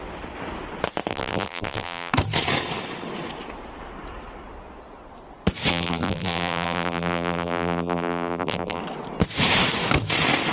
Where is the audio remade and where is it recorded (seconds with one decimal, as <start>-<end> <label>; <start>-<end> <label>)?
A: 0.0-1.1 recorded; 1.1-2.1 remade; 2.1-5.7 recorded; 5.7-8.8 remade; 8.8-10.5 recorded